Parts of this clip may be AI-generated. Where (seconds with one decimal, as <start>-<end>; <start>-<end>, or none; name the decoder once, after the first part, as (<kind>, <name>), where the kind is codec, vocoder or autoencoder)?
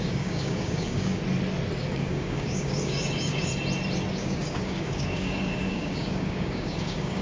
0.0-1.2 (codec, DAC); 1.8-3.5; 4.1-7.2